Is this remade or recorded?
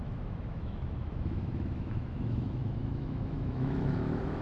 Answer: remade